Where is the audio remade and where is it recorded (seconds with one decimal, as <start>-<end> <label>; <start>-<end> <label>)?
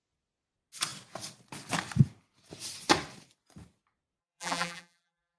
0.0-4.2 recorded; 4.2-5.4 remade